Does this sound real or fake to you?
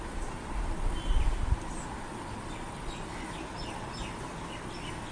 real